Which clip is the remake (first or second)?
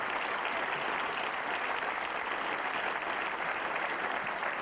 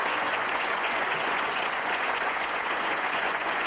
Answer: second